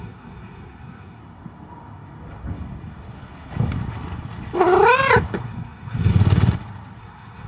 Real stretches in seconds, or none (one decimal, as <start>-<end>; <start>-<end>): 1.2-5.4; 6.1-7.0